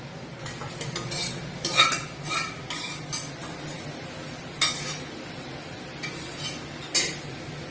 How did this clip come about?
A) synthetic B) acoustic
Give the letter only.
B